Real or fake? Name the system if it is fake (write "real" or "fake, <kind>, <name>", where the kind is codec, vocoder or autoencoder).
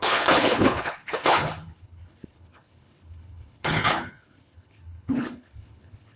fake, codec, HILCodec